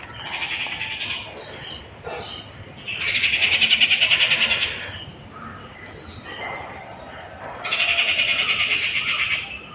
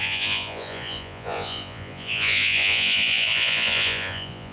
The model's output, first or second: second